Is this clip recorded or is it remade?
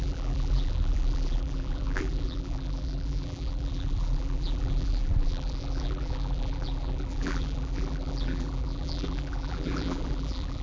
remade